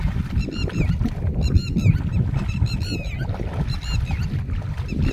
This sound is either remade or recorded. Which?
recorded